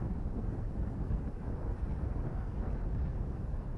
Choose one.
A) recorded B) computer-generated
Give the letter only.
B